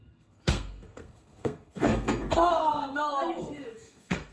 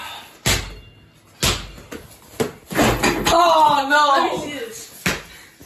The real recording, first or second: second